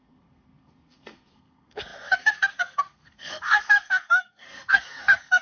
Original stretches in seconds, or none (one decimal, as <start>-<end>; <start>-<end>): none